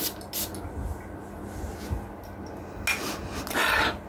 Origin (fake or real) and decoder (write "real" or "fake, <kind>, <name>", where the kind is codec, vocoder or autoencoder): real